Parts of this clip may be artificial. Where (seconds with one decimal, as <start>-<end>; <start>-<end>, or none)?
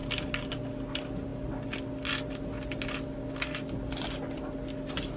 none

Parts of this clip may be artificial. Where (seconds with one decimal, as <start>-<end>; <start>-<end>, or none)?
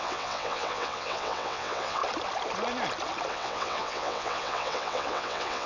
0.0-2.0; 3.3-5.7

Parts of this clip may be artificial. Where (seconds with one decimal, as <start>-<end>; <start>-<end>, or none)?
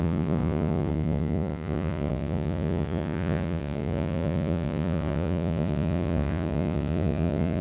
0.0-7.6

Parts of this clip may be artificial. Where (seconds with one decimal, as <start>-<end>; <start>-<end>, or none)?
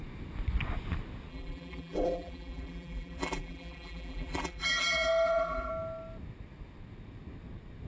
1.3-5.7